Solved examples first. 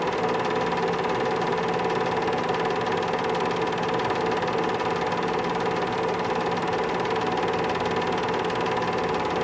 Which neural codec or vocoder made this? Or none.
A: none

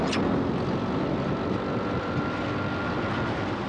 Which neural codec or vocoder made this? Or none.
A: none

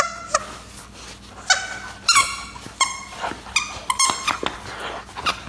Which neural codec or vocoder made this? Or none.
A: none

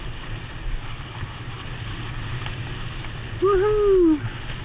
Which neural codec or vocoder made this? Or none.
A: none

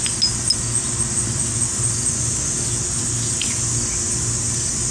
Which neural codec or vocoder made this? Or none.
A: none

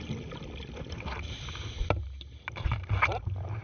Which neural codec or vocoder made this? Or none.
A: none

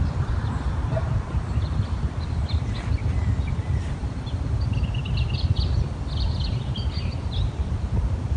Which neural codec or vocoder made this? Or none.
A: vocoder, BigVGAN v2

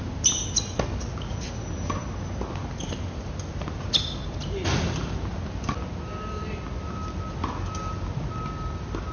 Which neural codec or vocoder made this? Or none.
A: none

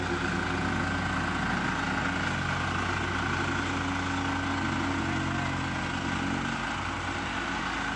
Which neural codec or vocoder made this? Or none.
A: none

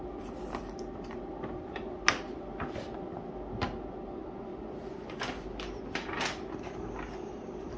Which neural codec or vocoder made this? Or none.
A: none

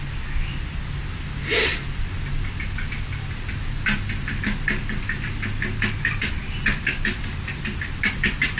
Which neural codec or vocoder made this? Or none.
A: none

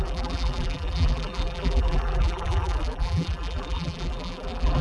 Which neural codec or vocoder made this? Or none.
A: vocoder, BigVGAN v2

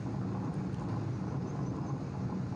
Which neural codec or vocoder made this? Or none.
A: none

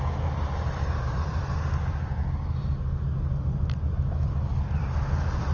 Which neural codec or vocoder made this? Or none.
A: none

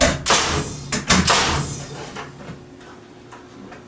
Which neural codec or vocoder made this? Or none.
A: none